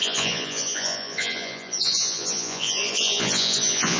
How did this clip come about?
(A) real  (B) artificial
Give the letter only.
B